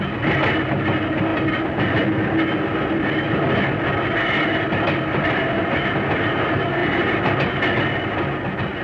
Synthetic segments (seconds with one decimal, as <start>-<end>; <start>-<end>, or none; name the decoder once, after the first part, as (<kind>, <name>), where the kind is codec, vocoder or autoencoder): 6.8-7.6 (vocoder, BigVGAN v2)